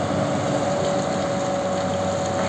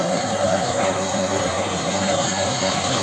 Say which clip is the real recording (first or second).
first